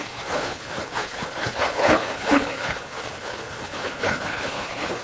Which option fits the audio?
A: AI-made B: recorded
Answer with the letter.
A